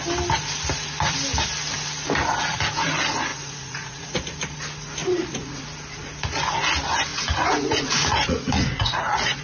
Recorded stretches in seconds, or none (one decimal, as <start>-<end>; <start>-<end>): 0.0-3.3; 4.2-5.0; 5.6-7.1